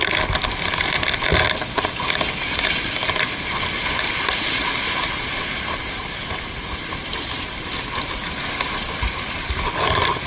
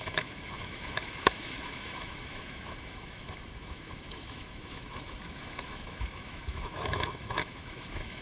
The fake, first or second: second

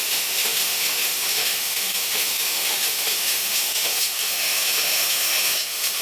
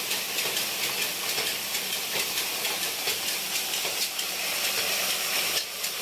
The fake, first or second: first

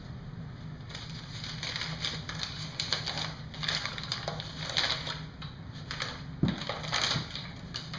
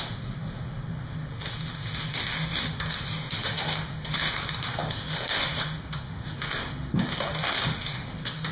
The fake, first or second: second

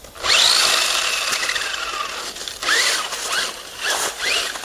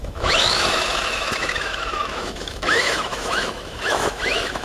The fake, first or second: second